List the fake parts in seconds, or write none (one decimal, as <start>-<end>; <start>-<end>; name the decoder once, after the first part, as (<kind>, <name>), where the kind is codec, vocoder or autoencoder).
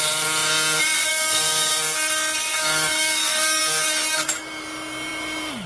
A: 1.1-1.7 (codec, DAC); 2.5-3.6